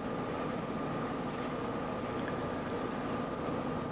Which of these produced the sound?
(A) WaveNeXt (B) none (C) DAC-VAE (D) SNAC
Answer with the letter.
B